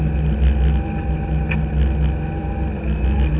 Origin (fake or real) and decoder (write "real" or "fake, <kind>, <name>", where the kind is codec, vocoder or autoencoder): real